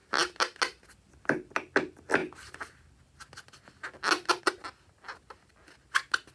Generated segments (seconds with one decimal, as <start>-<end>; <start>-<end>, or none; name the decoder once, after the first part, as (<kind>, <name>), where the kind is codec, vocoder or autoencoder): none

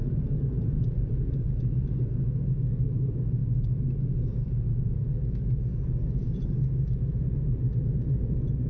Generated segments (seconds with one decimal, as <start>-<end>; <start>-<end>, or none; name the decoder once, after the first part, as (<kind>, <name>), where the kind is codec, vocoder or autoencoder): 0.0-1.9 (vocoder, Vocos); 3.4-8.7

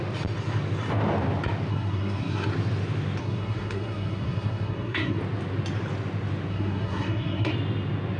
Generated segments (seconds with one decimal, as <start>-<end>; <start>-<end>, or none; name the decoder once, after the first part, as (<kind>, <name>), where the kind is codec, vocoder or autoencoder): 1.7-2.5 (codec, SNAC); 3.2-5.2; 6.5-7.5

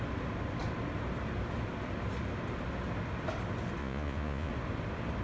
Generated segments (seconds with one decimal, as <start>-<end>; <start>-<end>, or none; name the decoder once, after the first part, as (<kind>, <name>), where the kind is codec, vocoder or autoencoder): 3.8-4.5 (vocoder, Vocos)

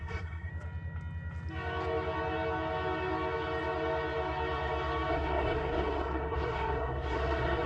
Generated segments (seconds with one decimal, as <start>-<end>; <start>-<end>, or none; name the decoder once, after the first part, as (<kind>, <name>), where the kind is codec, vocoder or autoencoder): 0.0-0.5 (codec, SNAC); 5.1-7.7

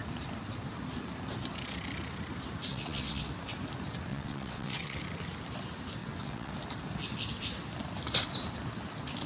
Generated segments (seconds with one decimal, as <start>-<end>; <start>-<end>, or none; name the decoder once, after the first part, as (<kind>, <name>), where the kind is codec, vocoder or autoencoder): 2.7-3.3 (vocoder, WaveNeXt); 4.1-5.0; 6.0-6.5